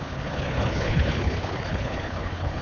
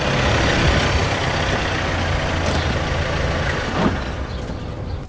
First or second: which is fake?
first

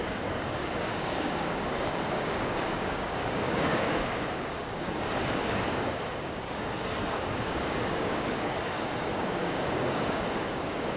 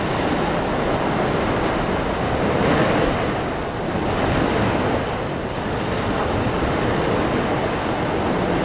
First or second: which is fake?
first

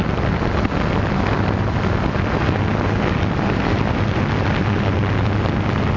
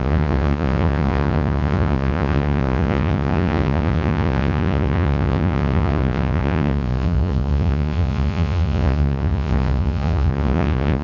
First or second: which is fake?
second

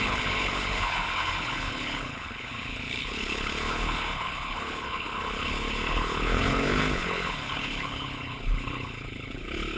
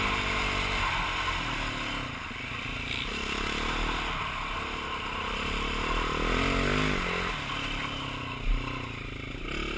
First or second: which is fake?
first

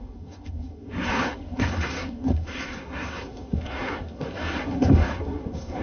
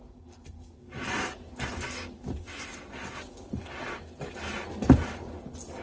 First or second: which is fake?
first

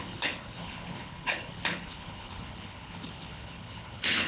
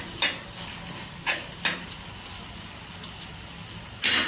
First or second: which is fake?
first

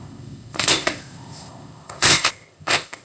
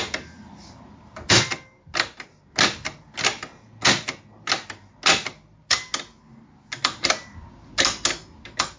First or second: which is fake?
first